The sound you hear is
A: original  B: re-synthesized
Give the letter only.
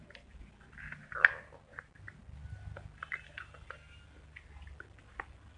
A